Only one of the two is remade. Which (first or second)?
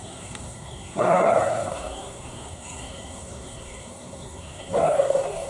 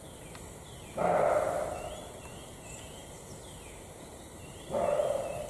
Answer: first